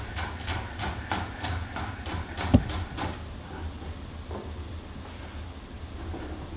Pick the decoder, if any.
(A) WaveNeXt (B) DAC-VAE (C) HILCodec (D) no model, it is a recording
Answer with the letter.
D